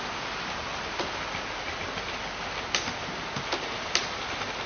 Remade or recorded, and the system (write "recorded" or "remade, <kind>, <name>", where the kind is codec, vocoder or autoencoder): recorded